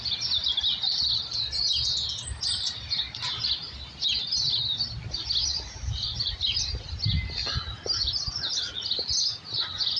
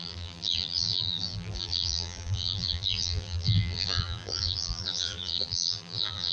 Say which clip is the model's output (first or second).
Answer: second